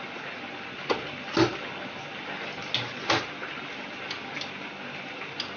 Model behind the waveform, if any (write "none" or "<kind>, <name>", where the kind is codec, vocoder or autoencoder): none